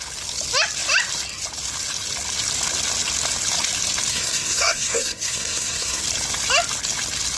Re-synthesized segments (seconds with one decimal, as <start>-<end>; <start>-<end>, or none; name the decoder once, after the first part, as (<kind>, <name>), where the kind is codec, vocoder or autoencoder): 4.1-6.0 (codec, SNAC)